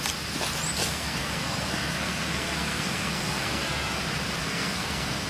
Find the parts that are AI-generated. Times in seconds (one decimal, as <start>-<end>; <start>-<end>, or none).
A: 0.8-4.0; 4.4-5.3